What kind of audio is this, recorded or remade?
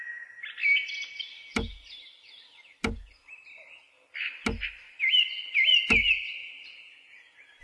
recorded